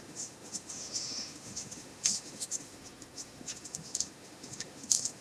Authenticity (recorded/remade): remade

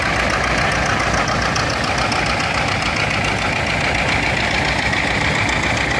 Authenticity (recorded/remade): recorded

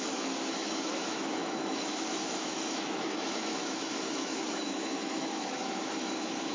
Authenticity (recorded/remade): remade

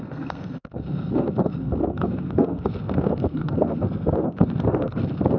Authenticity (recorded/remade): remade